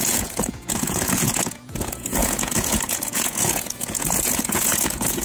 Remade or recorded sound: remade